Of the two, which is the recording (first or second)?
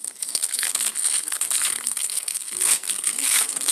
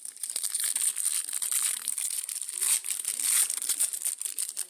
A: second